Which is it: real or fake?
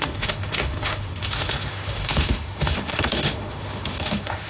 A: fake